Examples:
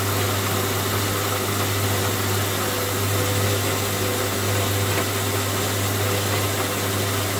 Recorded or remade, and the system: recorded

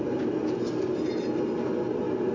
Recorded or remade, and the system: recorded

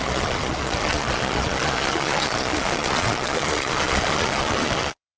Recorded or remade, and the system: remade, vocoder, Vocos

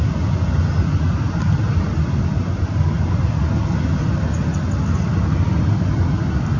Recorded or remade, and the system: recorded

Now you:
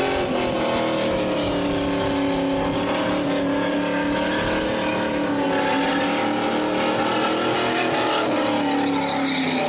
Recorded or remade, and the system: recorded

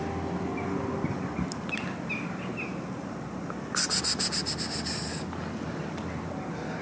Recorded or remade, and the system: recorded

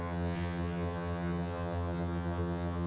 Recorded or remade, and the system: remade, vocoder, HiFi-GAN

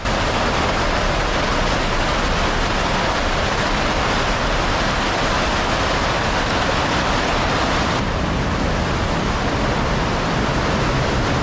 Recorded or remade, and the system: recorded